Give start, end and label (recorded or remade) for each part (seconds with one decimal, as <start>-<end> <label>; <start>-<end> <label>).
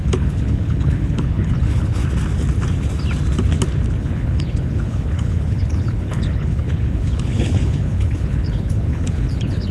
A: 0.0-2.0 remade; 2.0-4.0 recorded; 4.0-9.7 remade